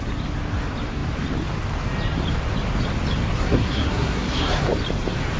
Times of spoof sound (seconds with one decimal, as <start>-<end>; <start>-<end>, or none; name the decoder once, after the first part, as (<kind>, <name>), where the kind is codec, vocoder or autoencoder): 3.4-4.7 (codec, SNAC)